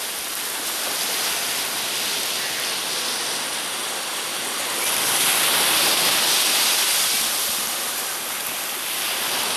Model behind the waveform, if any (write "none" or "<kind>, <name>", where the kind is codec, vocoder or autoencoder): none